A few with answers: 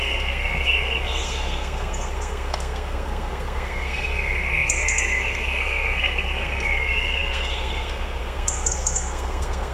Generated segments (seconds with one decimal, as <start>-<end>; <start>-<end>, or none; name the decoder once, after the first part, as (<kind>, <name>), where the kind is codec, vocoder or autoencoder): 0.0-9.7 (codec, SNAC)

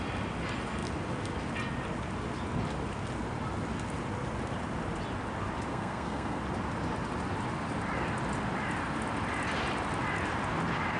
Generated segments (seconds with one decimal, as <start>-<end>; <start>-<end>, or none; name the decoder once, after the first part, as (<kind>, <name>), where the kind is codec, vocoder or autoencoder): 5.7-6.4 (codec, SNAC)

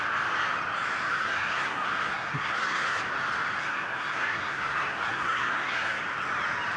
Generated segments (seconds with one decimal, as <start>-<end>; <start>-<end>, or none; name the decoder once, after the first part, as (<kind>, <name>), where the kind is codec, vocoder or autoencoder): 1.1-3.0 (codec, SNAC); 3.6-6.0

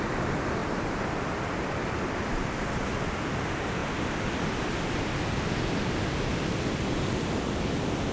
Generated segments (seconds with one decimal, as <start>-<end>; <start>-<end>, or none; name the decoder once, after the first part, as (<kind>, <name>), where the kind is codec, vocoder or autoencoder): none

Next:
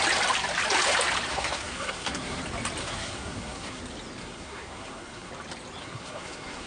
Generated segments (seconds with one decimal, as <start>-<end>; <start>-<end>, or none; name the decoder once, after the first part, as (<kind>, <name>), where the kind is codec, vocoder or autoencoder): 1.3-2.4 (codec, SNAC); 2.8-3.8; 4.2-5.3; 5.8-6.7

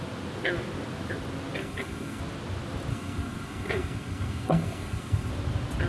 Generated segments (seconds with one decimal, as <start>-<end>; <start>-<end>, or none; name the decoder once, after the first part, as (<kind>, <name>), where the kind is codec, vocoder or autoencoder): 1.6-2.2 (codec, SNAC); 2.9-5.3

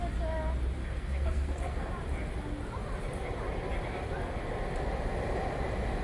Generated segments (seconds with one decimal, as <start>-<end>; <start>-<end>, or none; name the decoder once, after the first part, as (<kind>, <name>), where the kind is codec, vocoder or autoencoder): 0.8-1.9 (codec, SNAC)

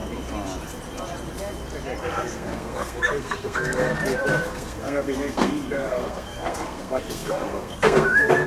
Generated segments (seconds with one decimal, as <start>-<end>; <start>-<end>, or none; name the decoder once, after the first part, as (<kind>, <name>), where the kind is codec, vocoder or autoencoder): 2.0-3.9 (codec, SNAC); 4.4-8.5